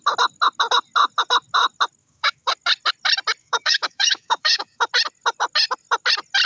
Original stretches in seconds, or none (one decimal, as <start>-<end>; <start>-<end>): 0.0-2.0; 2.5-3.4; 4.9-6.5